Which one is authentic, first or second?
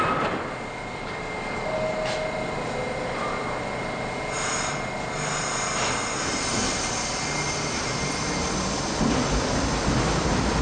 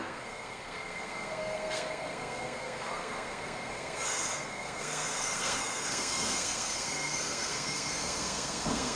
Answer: first